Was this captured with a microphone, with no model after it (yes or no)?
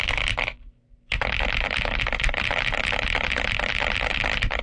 yes